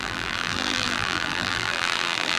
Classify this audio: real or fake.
fake